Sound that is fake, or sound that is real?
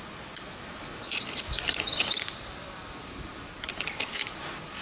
real